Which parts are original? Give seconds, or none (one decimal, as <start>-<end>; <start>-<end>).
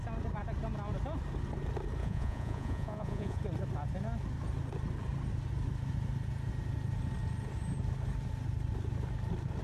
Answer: 0.0-2.0; 3.4-9.6